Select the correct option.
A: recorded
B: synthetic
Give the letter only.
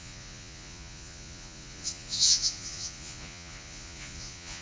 B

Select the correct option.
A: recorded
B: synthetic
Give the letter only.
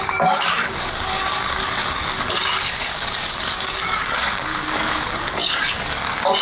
B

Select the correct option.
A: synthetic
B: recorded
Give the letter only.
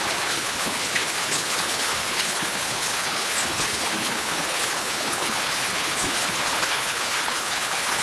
A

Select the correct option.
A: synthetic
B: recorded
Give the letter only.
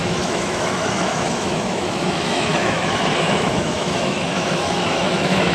A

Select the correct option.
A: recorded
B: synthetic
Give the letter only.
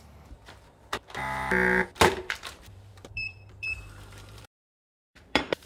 B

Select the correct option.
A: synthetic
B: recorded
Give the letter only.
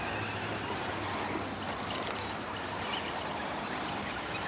B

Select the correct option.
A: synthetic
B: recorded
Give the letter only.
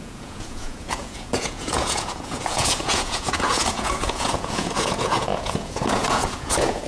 A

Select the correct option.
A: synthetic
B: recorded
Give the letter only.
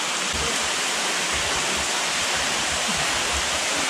B